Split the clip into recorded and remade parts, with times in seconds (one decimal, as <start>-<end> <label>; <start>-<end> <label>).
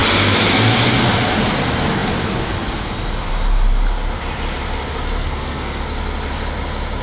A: 0.0-5.2 recorded; 5.2-5.8 remade; 5.8-7.0 recorded